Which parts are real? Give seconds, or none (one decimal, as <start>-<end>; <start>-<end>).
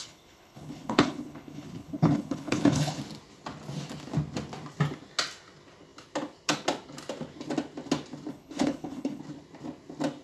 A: 3.0-8.3; 9.2-10.2